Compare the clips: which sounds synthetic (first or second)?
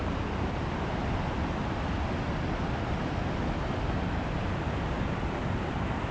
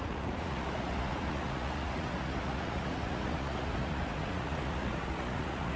second